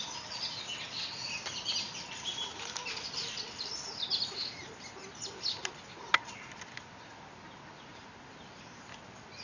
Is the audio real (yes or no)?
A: yes